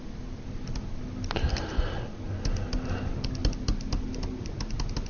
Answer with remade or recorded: recorded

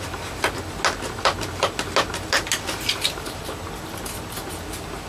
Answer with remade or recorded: recorded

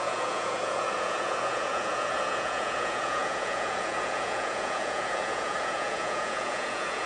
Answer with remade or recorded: remade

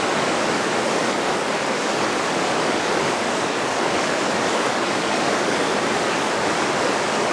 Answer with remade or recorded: remade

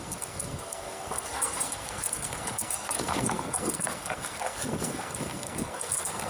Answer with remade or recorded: remade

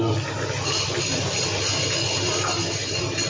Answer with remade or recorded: recorded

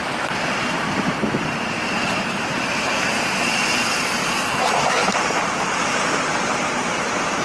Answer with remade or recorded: remade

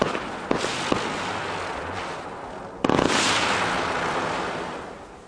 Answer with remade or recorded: recorded